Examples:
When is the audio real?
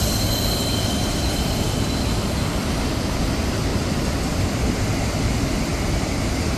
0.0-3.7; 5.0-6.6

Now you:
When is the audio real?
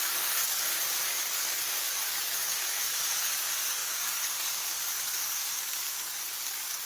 none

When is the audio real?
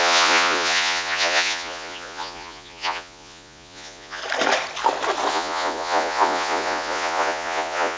4.2-5.3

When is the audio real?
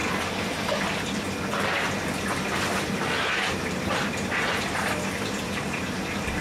0.0-2.8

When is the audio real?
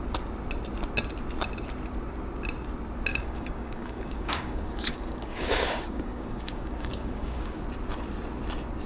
0.0-3.1; 7.6-8.9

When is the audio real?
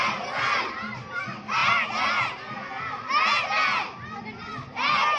0.0-5.2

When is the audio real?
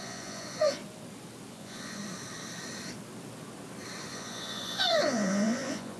0.8-1.5; 2.0-4.1